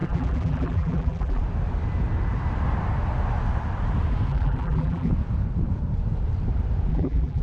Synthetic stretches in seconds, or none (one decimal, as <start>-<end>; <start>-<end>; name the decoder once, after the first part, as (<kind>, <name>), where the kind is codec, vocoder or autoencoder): 0.0-1.4 (vocoder, BigVGAN v2); 4.3-5.1; 6.9-7.4